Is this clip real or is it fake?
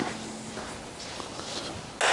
real